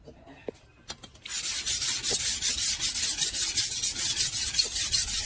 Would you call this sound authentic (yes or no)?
yes